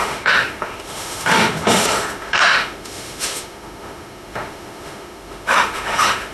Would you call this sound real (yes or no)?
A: no